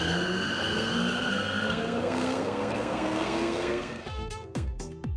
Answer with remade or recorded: remade